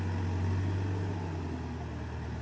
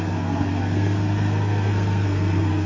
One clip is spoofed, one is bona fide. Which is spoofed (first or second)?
second